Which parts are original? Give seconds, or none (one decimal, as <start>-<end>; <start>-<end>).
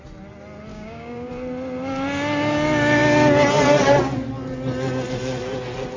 0.0-0.7; 1.3-6.0